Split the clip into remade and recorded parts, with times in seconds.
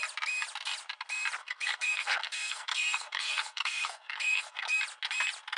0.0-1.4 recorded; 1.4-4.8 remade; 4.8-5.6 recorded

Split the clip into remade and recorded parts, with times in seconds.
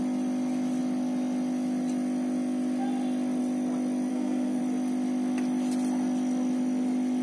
0.0-4.1 recorded; 4.1-4.6 remade; 4.6-7.2 recorded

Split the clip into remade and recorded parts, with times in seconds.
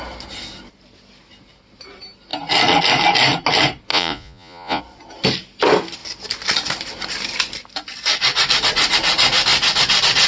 0.0-3.9 recorded; 3.9-4.8 remade; 4.8-10.3 recorded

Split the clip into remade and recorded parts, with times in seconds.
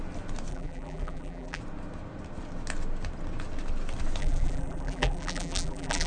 0.0-0.5 recorded; 0.5-1.6 remade; 1.6-4.2 recorded; 4.2-6.1 remade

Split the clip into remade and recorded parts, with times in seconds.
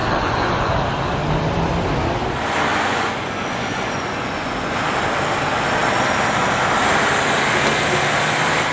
0.0-0.7 remade; 0.7-2.7 recorded; 2.7-4.8 remade; 4.8-8.7 recorded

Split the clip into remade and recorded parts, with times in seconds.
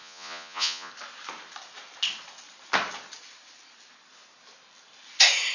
0.0-0.9 remade; 0.9-5.5 recorded